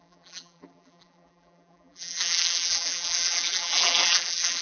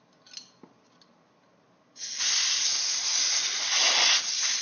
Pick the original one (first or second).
second